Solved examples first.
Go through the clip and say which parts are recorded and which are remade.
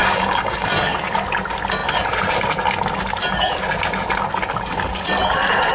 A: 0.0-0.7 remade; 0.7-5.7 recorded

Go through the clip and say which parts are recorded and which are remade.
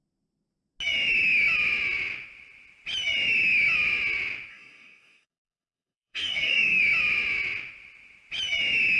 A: 0.0-4.5 recorded; 4.5-6.8 remade; 6.8-9.0 recorded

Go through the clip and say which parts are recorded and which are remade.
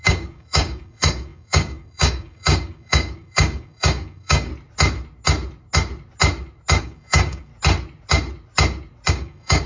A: 0.0-4.5 remade; 4.5-6.8 recorded; 6.8-7.5 remade; 7.5-9.1 recorded; 9.1-9.7 remade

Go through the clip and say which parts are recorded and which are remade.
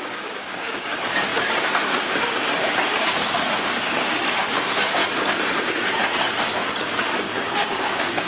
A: 0.0-5.0 remade; 5.0-5.6 recorded; 5.6-6.0 remade; 6.0-6.8 recorded; 6.8-8.3 remade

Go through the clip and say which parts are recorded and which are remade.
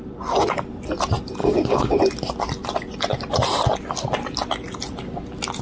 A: 0.0-1.4 recorded; 1.4-2.0 remade; 2.0-5.6 recorded